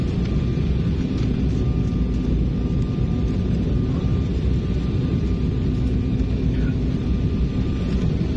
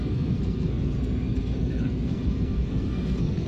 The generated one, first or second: second